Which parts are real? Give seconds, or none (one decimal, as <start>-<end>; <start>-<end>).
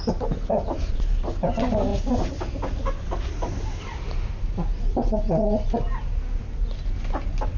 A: 0.0-7.6